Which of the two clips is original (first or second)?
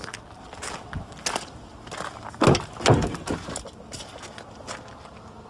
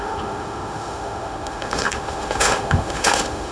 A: first